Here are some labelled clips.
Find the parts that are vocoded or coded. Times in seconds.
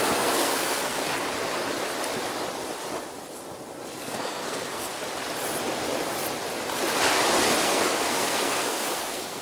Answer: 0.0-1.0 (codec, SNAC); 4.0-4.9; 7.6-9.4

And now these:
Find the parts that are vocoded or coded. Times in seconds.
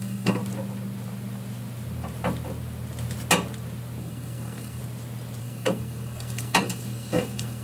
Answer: 0.0-0.4 (codec, SNAC); 4.0-4.8; 5.4-7.6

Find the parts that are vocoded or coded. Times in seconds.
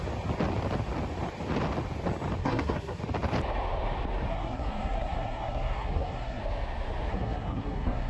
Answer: 2.4-3.0 (codec, SNAC); 4.3-6.4; 7.1-8.1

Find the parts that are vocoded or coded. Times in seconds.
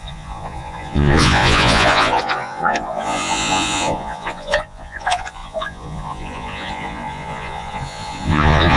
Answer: 0.0-8.8 (vocoder, Vocos)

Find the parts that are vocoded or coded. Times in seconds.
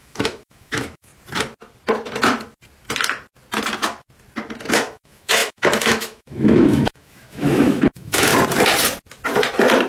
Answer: 0.0-1.1 (autoencoder, DAC-VAE); 4.7-8.3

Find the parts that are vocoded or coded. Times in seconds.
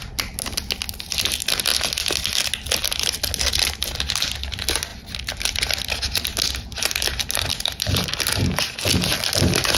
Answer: none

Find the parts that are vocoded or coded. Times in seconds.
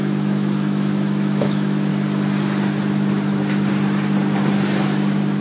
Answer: 0.0-1.9 (autoencoder, DAC-VAE)